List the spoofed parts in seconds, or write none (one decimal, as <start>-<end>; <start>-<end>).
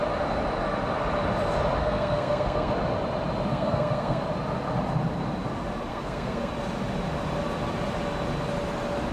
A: 1.8-2.7; 3.5-4.2; 5.9-6.5